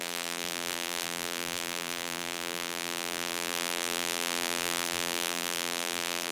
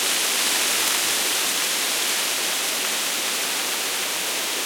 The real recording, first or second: second